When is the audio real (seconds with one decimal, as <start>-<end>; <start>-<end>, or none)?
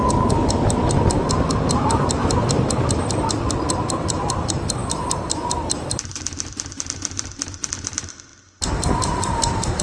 0.8-3.7; 4.8-7.7